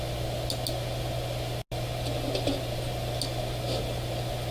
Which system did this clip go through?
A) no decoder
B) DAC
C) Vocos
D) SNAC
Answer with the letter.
A